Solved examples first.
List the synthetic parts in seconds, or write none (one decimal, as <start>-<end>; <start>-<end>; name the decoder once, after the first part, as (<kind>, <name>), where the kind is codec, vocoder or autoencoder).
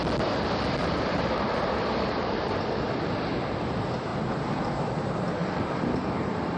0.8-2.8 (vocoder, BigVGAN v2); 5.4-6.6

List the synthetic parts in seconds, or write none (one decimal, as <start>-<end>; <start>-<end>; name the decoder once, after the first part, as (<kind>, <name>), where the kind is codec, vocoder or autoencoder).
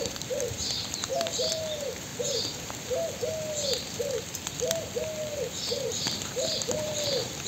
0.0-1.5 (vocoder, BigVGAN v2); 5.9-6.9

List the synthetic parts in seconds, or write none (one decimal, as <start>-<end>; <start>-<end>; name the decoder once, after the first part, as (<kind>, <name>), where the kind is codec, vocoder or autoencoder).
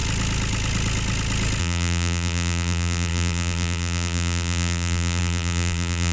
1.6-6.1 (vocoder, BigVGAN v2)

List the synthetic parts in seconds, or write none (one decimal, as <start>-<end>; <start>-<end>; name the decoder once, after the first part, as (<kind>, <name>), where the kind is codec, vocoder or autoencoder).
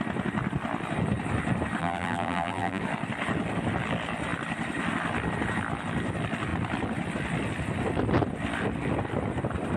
1.8-2.8 (vocoder, BigVGAN v2)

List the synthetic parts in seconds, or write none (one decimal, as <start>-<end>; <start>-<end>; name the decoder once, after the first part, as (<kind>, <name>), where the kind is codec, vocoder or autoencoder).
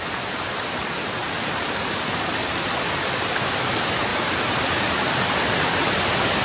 1.2-2.3 (vocoder, BigVGAN v2); 4.1-5.3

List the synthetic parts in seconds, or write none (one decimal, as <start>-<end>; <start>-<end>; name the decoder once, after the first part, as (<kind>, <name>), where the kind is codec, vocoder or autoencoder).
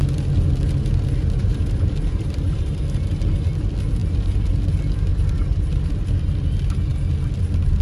1.4-2.8 (vocoder, BigVGAN v2); 4.0-4.5; 5.1-5.9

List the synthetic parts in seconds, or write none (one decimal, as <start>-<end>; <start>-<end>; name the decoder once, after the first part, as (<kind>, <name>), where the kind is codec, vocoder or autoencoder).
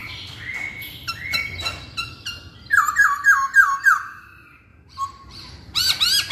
4.7-5.8 (vocoder, BigVGAN v2)